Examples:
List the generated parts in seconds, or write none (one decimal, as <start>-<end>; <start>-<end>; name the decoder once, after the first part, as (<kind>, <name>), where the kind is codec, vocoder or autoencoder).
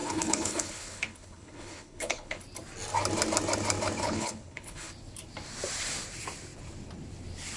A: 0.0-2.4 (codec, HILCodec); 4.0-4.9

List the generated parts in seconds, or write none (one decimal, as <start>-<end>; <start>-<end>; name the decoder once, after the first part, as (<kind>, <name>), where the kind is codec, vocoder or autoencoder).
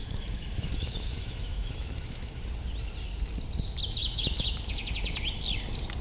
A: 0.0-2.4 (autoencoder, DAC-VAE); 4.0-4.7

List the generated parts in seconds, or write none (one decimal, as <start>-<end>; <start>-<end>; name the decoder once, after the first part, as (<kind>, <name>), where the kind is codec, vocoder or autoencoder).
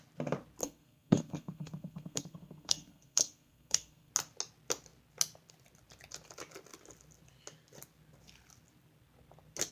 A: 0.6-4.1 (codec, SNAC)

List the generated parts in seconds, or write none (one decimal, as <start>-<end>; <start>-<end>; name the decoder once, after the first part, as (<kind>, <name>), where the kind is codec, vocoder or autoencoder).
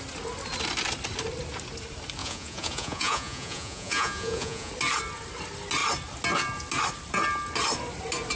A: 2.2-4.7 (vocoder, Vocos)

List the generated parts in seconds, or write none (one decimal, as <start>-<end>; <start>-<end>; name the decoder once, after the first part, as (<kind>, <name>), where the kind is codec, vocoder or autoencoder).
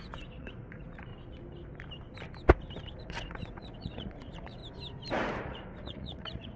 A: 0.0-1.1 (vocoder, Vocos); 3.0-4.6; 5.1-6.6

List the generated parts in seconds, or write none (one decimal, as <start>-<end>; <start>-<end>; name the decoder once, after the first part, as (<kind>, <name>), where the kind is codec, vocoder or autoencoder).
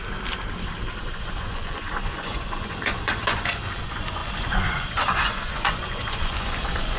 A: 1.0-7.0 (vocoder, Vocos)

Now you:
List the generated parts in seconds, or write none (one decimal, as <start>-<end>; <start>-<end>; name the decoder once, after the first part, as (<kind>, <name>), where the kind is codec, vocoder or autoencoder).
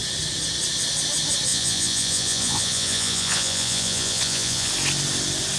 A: 1.5-4.7 (vocoder, Vocos)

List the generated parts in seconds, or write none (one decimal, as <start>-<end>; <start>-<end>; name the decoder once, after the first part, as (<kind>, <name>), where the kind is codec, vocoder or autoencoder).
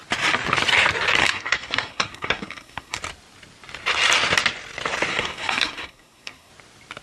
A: 1.2-3.0 (codec, SNAC); 5.1-6.5